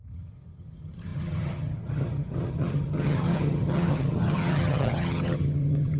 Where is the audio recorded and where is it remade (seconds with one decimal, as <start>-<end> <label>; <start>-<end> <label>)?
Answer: 0.0-6.0 remade